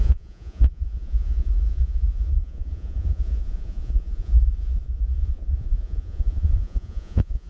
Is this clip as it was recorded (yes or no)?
no